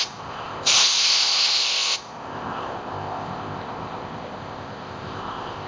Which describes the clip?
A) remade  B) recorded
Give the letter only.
A